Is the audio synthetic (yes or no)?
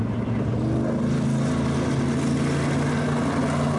no